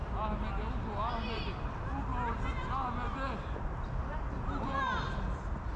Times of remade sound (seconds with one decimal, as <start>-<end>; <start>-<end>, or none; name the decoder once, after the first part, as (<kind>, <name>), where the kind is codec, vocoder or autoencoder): none